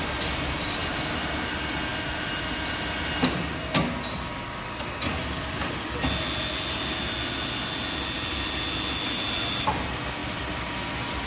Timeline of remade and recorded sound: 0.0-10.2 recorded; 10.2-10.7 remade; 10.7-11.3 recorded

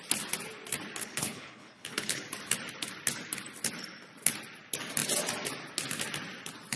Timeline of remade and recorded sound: 0.0-1.0 recorded; 1.0-2.2 remade; 2.2-6.8 recorded

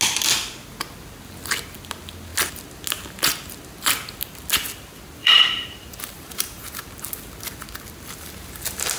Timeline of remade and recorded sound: 0.0-5.2 recorded; 5.2-6.8 remade; 6.8-9.0 recorded